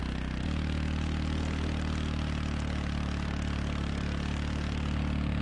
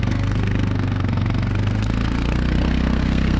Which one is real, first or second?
first